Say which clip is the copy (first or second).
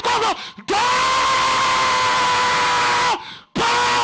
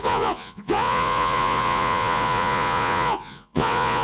second